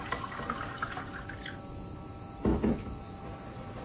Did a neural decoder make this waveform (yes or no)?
no